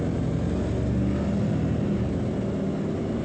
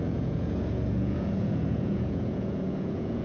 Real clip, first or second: first